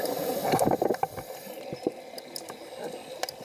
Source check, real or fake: real